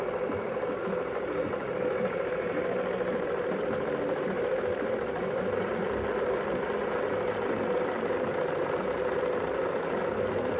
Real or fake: real